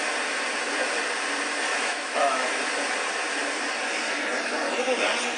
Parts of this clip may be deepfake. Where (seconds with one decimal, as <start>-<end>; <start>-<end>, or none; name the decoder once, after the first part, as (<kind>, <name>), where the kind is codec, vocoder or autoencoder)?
1.7-2.6 (autoencoder, DAC-VAE)